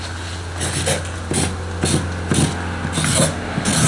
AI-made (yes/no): no